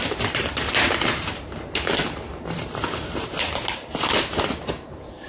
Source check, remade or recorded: remade